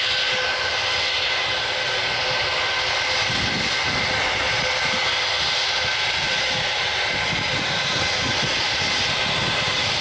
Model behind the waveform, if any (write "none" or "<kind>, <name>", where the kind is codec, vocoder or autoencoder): none